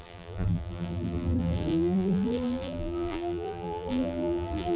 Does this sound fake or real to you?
fake